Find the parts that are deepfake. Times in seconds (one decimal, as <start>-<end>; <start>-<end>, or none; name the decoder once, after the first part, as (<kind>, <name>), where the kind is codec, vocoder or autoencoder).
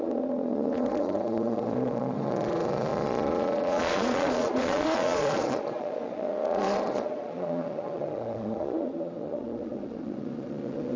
0.0-11.0 (vocoder, Vocos)